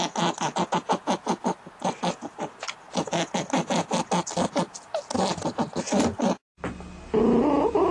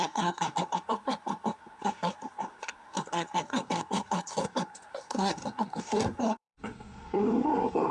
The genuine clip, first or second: first